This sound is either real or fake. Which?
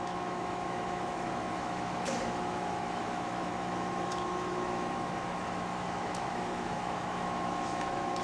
fake